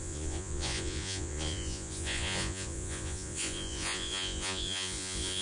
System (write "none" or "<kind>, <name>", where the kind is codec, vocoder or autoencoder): vocoder, Vocos